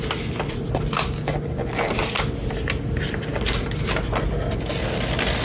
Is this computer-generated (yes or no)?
no